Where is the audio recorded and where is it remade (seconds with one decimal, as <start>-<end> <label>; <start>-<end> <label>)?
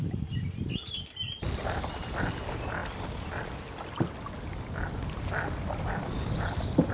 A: 0.0-6.9 recorded